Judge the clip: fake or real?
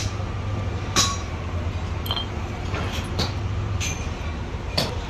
real